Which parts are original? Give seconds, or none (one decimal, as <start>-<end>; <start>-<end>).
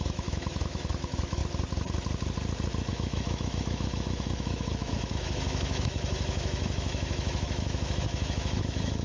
1.4-2.9